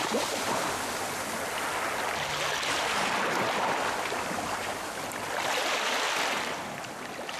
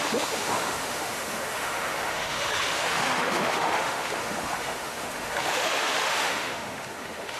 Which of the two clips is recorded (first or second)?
first